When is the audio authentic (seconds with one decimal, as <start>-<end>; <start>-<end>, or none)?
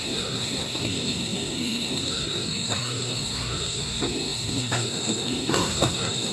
none